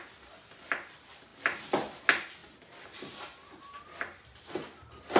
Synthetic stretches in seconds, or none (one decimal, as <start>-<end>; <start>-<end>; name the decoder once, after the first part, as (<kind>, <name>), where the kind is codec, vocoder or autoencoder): none